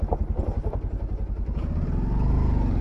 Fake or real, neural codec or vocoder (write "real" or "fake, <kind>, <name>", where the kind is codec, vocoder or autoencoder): real